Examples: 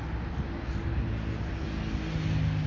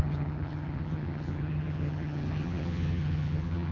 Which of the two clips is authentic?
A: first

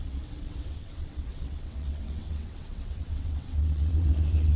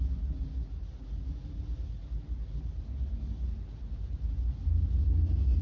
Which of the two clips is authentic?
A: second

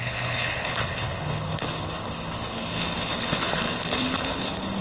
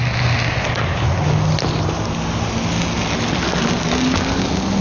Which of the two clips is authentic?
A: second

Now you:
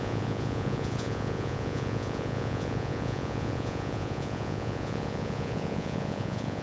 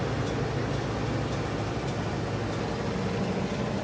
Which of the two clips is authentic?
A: second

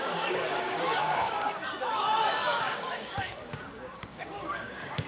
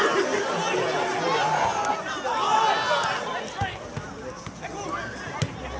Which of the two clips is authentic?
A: second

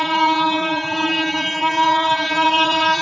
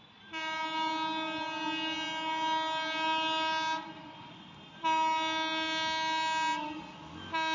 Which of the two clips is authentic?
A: second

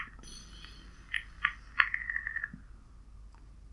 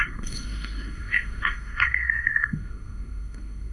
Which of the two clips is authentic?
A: first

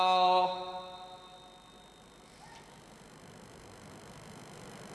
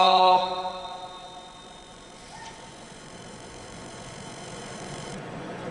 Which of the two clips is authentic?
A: first